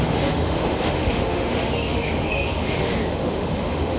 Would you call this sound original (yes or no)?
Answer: no